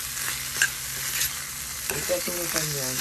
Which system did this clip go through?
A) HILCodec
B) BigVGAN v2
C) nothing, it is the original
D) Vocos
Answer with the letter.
C